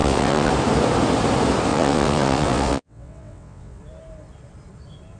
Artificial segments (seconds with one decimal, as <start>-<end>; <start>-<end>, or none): 0.0-0.5; 1.7-3.8